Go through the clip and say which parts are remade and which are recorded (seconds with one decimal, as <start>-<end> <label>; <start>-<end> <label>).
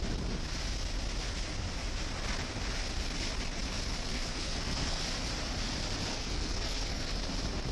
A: 0.0-4.1 recorded; 4.1-5.0 remade; 5.0-6.1 recorded; 6.1-7.2 remade; 7.2-7.7 recorded